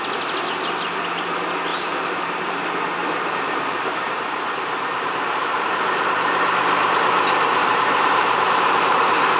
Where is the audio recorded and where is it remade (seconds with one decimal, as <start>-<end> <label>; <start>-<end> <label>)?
0.0-1.7 recorded; 1.7-2.6 remade; 2.6-3.0 recorded; 3.0-5.7 remade; 5.7-7.6 recorded; 7.6-9.0 remade; 9.0-9.4 recorded